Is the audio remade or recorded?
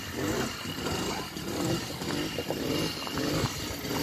recorded